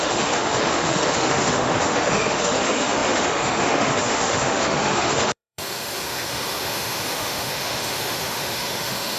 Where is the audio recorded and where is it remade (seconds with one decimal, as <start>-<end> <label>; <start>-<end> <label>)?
0.0-9.2 remade